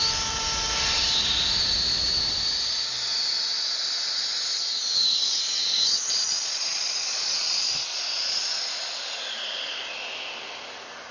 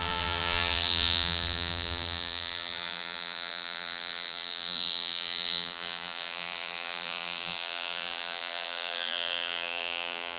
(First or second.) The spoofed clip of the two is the second